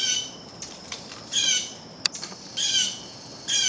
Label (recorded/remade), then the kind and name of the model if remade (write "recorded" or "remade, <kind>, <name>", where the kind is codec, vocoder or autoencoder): remade, vocoder, BigVGAN v2